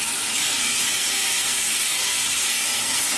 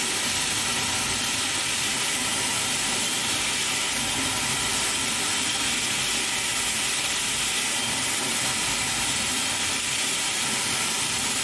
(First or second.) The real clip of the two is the second